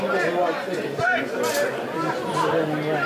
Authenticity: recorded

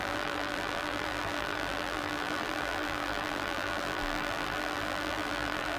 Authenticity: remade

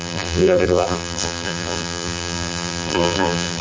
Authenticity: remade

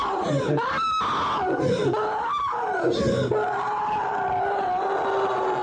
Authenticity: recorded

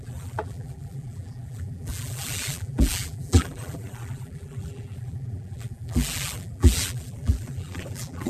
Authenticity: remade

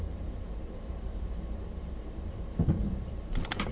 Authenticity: remade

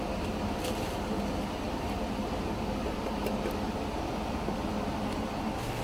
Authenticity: recorded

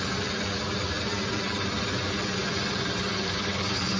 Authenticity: remade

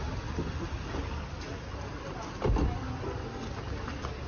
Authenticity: recorded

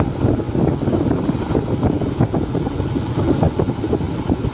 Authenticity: recorded